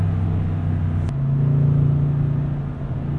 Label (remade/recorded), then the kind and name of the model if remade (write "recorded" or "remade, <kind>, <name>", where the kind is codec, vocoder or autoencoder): recorded